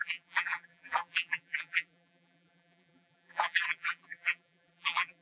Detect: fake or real fake